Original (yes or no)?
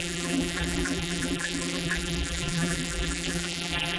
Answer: no